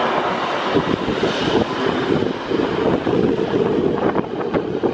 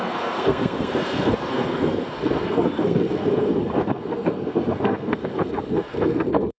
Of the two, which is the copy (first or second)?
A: second